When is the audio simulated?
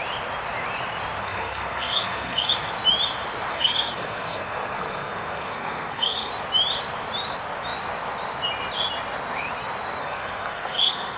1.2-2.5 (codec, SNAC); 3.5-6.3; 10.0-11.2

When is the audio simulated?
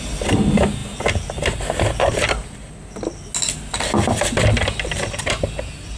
none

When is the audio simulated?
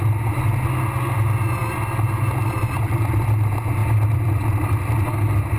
3.8-4.3 (vocoder, BigVGAN v2)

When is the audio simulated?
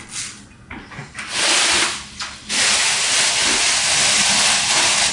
none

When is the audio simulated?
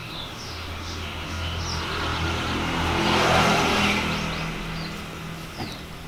0.0-1.6 (autoencoder, DAC-VAE)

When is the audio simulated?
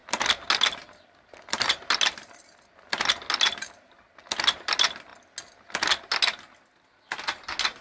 none